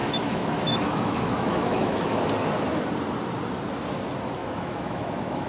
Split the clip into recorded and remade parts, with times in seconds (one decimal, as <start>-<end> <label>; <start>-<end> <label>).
0.0-2.2 remade; 2.2-4.4 recorded; 4.4-5.5 remade